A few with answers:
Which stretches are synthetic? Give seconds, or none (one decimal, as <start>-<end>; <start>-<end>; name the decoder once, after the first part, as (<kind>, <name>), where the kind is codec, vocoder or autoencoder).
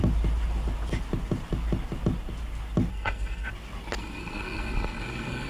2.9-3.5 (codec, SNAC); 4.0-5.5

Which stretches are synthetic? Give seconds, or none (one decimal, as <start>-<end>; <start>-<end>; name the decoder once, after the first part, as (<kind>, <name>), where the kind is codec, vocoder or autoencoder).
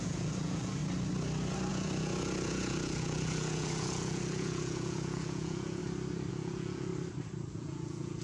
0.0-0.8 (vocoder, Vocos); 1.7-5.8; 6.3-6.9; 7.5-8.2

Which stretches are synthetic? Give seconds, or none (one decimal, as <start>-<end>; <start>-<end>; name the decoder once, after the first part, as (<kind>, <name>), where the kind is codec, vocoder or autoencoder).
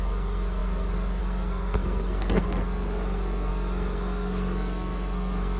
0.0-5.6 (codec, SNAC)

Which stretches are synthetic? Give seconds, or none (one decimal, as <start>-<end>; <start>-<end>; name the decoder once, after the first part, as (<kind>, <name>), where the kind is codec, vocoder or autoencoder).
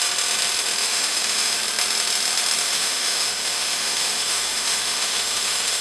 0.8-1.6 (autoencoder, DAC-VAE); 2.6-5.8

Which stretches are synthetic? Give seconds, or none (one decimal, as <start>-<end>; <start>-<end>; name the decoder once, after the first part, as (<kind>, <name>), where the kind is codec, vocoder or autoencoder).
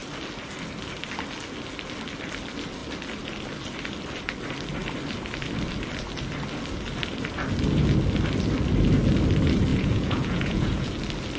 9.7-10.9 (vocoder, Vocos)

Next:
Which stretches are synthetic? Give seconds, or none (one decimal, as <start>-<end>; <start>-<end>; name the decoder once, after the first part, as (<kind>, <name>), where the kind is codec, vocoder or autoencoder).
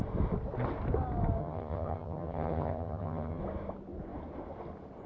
1.4-3.4 (vocoder, HiFi-GAN)